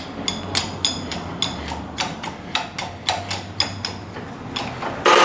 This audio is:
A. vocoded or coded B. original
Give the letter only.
B